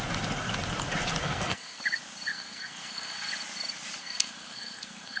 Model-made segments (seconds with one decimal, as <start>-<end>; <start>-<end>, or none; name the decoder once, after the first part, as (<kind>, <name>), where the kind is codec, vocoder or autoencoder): 1.2-1.8 (codec, SNAC); 2.3-3.3; 4.0-5.2